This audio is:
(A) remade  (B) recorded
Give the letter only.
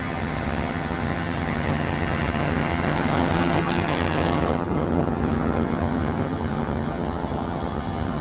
A